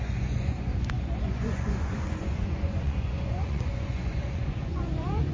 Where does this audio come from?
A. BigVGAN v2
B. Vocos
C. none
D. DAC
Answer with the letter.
B